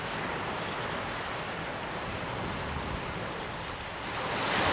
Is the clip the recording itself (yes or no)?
yes